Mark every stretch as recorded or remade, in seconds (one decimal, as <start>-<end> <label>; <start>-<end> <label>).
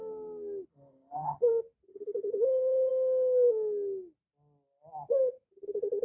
0.0-0.7 recorded; 0.7-1.5 remade; 1.5-1.9 recorded; 1.9-2.9 remade; 2.9-6.0 recorded